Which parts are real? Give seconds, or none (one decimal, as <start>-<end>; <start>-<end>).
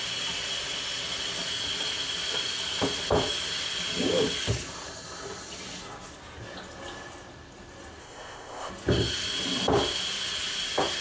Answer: 0.0-8.0; 8.7-11.0